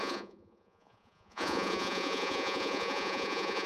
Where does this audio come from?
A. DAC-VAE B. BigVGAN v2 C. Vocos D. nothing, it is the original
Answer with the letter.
C